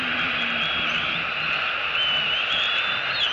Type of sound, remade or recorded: recorded